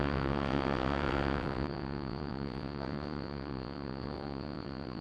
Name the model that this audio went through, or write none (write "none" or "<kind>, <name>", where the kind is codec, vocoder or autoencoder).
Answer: vocoder, WaveNeXt